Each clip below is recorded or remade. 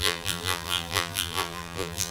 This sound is remade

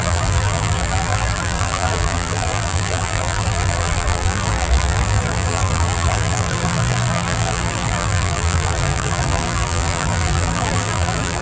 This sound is remade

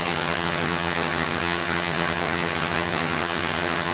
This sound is remade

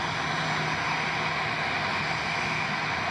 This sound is recorded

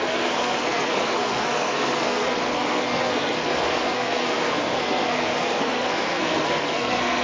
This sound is remade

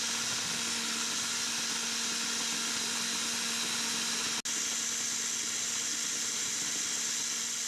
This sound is recorded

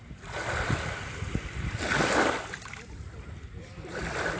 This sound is recorded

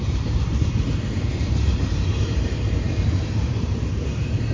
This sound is remade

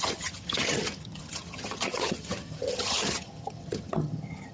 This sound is remade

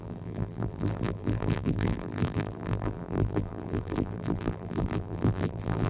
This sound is remade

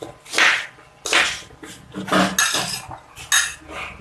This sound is recorded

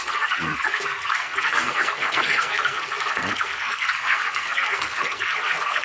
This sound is remade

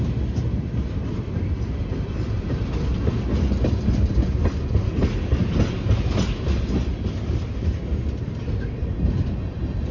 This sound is recorded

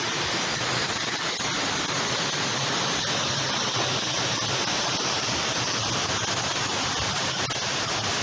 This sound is recorded